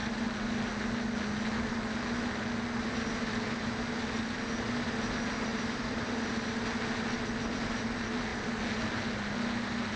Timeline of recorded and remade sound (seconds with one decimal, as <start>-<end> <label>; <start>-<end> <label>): 0.0-5.5 recorded; 5.5-6.7 remade; 6.7-10.0 recorded